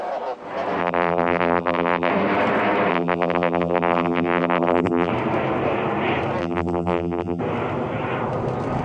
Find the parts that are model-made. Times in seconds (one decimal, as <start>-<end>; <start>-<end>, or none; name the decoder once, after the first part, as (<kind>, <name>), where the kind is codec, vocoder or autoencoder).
0.8-2.1 (vocoder, BigVGAN v2); 2.9-5.1; 6.4-7.4